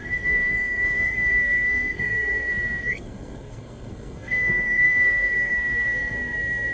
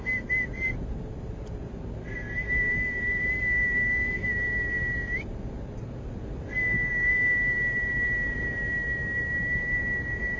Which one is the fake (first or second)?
first